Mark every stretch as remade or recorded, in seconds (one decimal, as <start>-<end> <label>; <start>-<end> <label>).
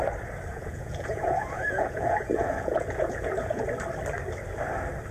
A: 0.0-0.5 recorded; 0.5-3.6 remade; 3.6-5.1 recorded